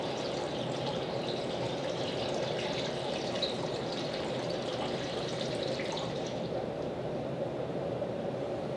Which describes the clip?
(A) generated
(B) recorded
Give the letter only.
A